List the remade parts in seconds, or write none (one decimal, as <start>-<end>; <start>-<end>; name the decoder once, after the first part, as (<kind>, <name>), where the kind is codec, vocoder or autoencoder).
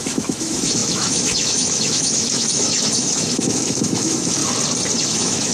0.0-4.4 (autoencoder, DAC-VAE); 5.0-5.5